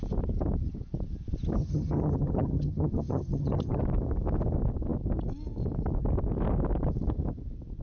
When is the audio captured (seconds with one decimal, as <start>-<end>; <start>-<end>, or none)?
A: 0.0-1.6; 3.8-7.8